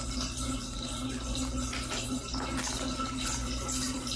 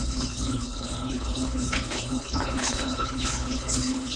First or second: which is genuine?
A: first